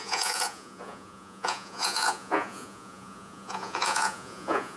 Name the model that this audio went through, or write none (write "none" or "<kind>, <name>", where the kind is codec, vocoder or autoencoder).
vocoder, Vocos